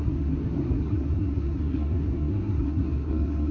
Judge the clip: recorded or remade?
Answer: remade